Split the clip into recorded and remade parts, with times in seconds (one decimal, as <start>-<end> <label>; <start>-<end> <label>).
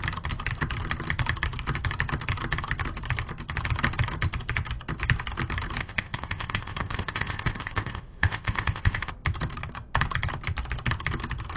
0.0-5.8 recorded; 5.8-9.1 remade; 9.1-11.6 recorded